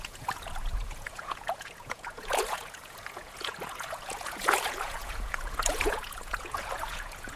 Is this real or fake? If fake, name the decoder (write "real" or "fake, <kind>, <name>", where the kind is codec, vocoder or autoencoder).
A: fake, vocoder, Vocos